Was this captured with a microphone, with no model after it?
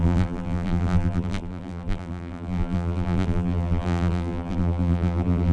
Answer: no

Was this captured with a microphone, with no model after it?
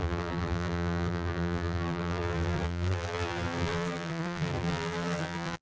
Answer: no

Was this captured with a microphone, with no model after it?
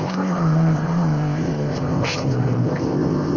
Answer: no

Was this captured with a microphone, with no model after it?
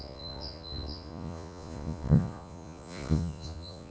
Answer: no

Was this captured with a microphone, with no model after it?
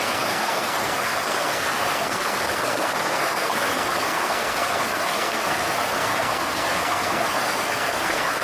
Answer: no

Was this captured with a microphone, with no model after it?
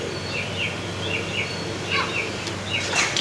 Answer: yes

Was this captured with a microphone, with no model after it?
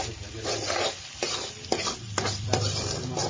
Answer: no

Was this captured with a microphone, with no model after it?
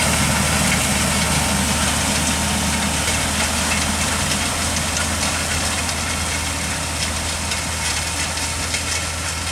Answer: yes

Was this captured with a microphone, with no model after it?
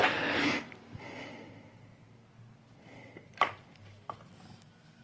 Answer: yes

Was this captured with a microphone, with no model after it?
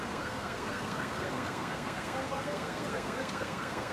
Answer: no